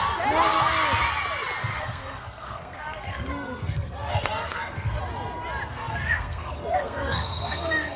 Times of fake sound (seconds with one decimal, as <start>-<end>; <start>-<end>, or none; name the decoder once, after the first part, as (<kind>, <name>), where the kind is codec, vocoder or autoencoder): 1.7-5.0 (codec, SNAC); 5.7-8.0